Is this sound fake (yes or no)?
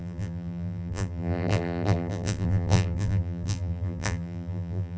yes